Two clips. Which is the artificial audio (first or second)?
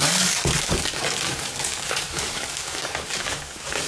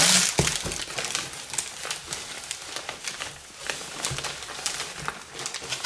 first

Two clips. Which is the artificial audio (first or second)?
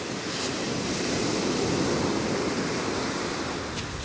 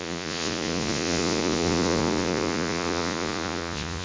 second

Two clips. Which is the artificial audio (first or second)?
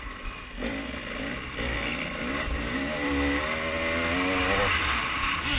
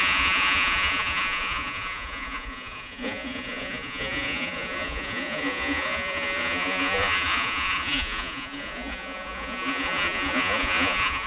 second